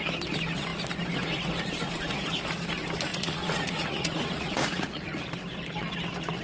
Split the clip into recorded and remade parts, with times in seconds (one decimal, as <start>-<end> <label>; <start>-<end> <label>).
0.0-3.1 recorded; 3.1-5.3 remade; 5.3-6.4 recorded